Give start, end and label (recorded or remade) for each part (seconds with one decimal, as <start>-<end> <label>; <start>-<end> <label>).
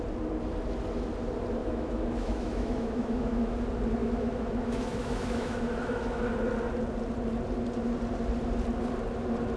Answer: 0.0-1.6 recorded; 1.6-3.6 remade; 3.6-4.0 recorded; 4.0-6.2 remade; 6.2-9.6 recorded